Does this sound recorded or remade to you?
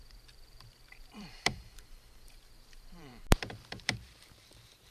remade